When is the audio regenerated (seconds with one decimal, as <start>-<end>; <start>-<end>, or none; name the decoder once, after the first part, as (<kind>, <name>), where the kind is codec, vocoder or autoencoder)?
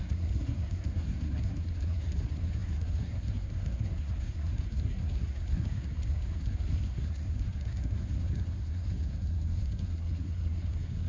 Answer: 0.0-11.1 (codec, SNAC)